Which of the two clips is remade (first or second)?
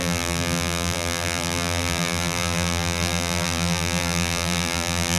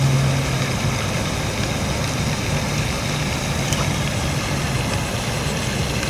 first